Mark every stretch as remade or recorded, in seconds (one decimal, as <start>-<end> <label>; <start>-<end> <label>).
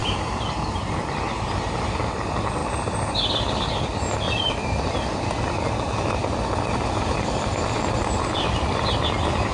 0.0-9.5 recorded